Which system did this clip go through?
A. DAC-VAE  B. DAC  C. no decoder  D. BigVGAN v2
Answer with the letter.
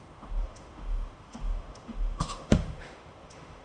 A